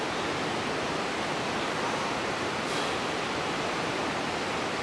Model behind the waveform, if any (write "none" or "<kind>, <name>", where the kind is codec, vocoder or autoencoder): vocoder, BigVGAN v2